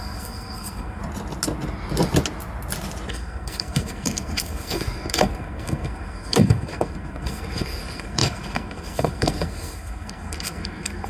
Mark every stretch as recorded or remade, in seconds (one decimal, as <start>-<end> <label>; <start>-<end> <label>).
0.0-1.0 remade; 1.0-3.1 recorded; 3.1-11.1 remade